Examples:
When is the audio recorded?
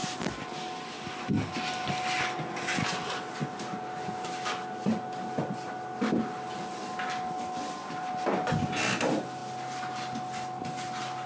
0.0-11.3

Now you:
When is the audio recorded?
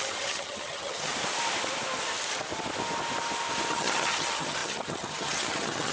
1.1-3.7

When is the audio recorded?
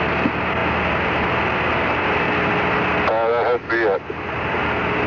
0.0-5.1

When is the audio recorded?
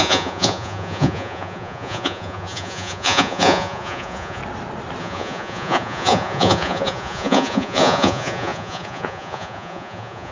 4.4-5.0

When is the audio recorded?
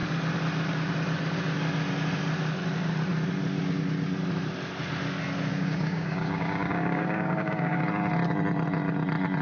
0.0-5.5; 7.8-9.4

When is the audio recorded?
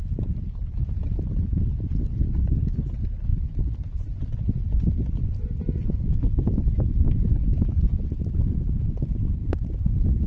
0.0-10.3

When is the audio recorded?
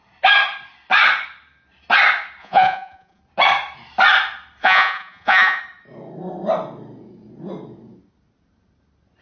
0.0-2.4; 3.2-4.6; 5.6-9.2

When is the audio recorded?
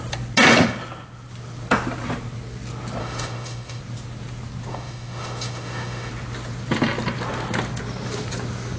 0.0-3.0; 3.8-4.7; 6.1-8.8